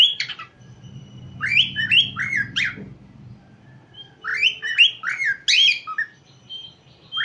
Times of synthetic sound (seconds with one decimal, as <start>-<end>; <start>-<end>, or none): 0.0-4.3; 6.3-7.2